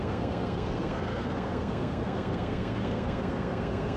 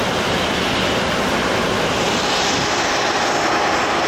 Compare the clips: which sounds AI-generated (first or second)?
first